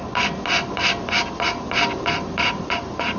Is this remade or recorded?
recorded